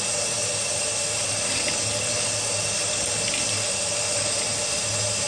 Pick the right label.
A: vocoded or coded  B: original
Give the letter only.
B